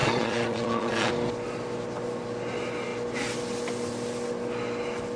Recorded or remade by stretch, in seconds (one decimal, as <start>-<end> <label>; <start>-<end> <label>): 0.0-1.1 remade; 1.1-5.2 recorded